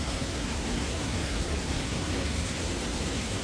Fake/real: fake